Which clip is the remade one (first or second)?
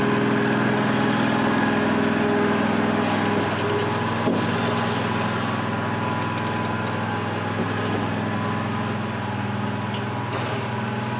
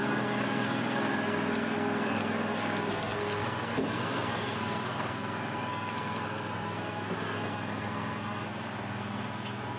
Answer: second